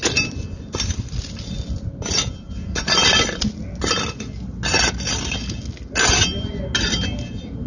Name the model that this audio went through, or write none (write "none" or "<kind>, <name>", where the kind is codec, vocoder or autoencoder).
none